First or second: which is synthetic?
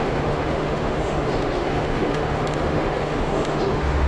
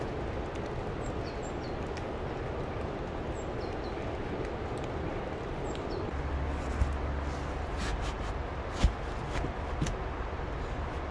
first